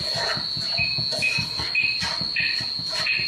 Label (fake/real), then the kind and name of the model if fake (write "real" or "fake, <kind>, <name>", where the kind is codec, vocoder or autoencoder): real